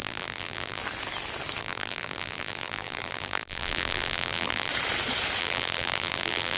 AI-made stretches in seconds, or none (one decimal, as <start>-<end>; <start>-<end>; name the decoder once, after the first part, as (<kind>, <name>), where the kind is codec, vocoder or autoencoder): 0.0-0.8 (vocoder, BigVGAN v2); 1.6-4.7; 5.4-6.6